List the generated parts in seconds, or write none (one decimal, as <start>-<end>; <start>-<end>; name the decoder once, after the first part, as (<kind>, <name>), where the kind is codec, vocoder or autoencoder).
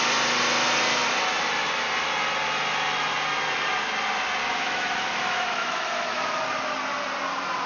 4.4-6.4 (autoencoder, DAC-VAE)